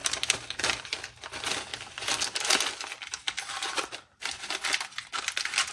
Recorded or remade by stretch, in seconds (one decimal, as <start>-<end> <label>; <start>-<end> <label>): 0.0-0.8 remade; 0.8-3.2 recorded; 3.2-4.2 remade; 4.2-5.7 recorded